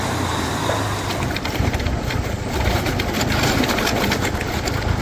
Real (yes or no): yes